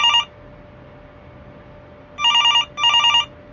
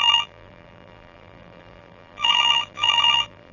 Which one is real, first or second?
first